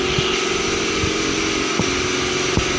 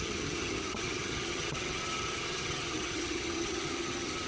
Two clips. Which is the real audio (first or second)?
first